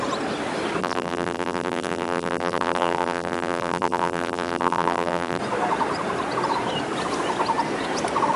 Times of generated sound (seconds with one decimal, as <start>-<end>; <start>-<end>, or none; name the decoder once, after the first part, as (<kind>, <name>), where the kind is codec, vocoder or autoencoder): 0.8-5.4 (vocoder, BigVGAN v2)